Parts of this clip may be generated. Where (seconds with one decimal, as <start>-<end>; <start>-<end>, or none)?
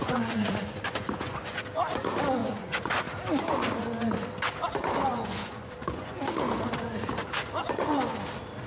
0.0-1.6; 2.4-2.9; 5.1-6.2